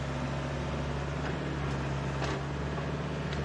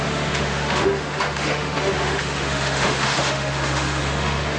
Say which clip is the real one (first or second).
first